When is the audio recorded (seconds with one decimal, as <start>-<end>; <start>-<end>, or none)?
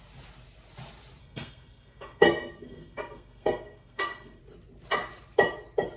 0.0-1.2; 4.4-6.0